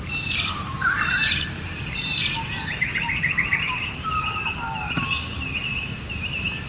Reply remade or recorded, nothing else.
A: remade